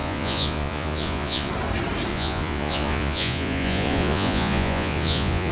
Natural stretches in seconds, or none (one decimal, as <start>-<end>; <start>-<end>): 1.5-2.1